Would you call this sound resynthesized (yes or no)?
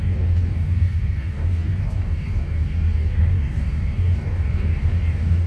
yes